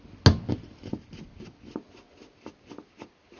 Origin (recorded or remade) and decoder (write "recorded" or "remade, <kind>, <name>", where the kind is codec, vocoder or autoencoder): recorded